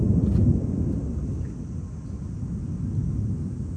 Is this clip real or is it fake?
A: real